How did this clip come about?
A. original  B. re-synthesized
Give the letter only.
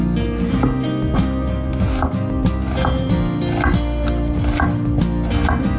A